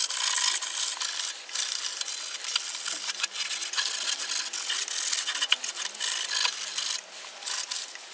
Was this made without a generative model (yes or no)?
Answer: yes